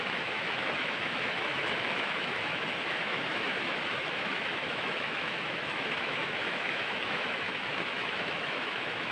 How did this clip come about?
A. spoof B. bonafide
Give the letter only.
A